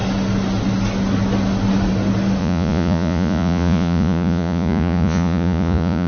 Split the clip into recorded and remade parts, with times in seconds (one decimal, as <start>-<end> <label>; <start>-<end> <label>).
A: 0.0-2.4 recorded; 2.4-6.1 remade